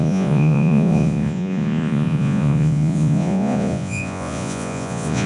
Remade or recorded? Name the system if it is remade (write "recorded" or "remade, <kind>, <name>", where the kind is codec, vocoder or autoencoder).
remade, vocoder, Vocos